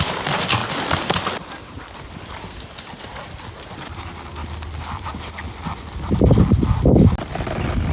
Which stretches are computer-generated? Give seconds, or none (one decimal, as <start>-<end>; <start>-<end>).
none